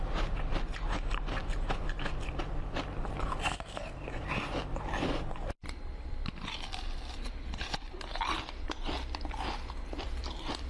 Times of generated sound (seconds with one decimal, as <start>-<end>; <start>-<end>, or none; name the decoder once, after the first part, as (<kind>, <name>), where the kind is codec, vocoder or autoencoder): 0.0-10.7 (vocoder, BigVGAN v2)

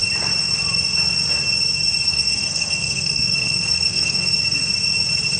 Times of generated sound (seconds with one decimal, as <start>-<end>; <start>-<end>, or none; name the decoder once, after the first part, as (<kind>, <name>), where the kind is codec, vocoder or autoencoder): 2.1-4.3 (codec, SNAC)

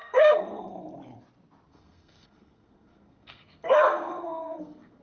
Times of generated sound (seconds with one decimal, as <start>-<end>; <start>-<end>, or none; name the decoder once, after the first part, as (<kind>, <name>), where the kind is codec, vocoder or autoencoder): 0.0-0.6 (codec, SNAC); 1.7-5.0

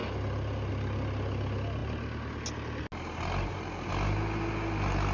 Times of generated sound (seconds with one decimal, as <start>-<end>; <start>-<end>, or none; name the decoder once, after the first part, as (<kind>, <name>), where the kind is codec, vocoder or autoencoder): none

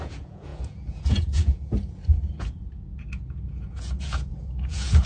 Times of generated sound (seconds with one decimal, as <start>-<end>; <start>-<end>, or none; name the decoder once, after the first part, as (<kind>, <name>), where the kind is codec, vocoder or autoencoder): 0.0-5.1 (vocoder, Vocos)

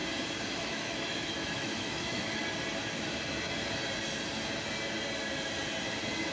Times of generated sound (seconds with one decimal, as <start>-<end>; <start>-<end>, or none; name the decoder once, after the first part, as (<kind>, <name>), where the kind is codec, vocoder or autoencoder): 0.6-2.4 (autoencoder, DAC-VAE)

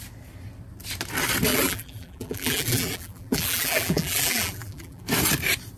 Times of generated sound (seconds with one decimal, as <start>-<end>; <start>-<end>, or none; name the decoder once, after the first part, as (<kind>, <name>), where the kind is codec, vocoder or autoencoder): 1.5-5.0 (vocoder, BigVGAN v2)

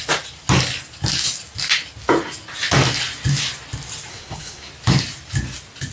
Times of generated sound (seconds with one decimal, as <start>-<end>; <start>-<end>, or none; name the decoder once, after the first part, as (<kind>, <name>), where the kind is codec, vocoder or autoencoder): 4.1-4.7 (codec, SNAC)